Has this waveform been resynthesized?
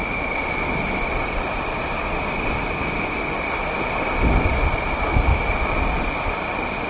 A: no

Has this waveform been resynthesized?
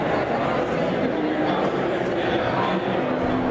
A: no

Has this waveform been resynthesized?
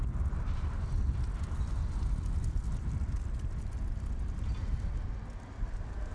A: no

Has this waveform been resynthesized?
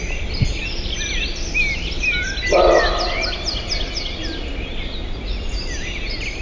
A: no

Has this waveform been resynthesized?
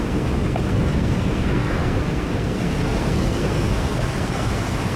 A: yes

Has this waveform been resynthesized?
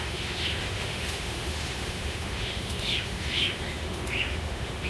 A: yes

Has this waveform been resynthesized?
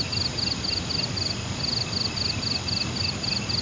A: no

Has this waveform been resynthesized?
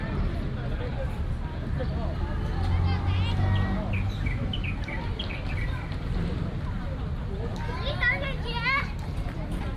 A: no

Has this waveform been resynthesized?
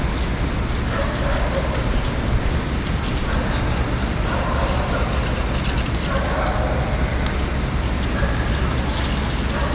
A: no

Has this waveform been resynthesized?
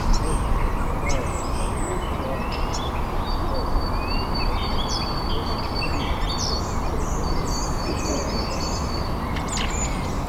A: no